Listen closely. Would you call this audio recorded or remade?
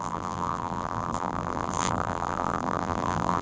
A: remade